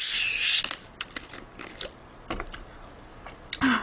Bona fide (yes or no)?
yes